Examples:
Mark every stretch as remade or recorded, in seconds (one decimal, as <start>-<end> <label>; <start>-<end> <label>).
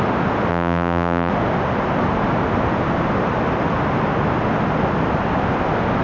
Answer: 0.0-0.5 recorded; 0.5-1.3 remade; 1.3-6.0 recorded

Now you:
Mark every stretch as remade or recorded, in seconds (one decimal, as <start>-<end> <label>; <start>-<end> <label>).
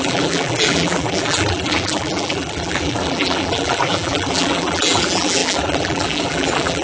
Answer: 0.0-6.8 remade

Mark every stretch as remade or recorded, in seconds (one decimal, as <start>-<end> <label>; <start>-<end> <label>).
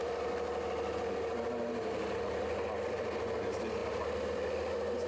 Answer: 0.0-5.1 recorded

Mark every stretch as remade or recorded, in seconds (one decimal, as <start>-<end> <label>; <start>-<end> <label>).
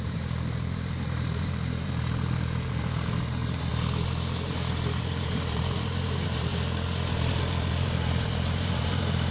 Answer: 0.0-3.7 remade; 3.7-5.0 recorded; 5.0-6.5 remade; 6.5-7.1 recorded; 7.1-9.3 remade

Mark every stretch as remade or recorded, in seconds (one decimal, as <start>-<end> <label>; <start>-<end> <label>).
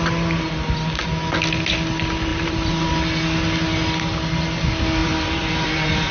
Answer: 0.0-2.3 recorded; 2.3-2.9 remade; 2.9-5.0 recorded; 5.0-6.1 remade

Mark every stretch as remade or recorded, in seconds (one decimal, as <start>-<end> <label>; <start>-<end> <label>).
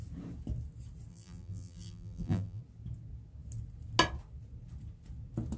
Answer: 0.0-1.1 recorded; 1.1-2.6 remade; 2.6-5.6 recorded